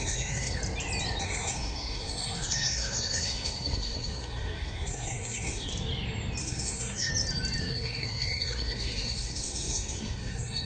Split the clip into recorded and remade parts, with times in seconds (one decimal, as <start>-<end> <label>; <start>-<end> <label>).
0.0-0.6 remade; 0.6-1.2 recorded; 1.2-5.7 remade; 5.7-6.4 recorded; 6.4-7.1 remade; 7.1-7.6 recorded; 7.6-10.6 remade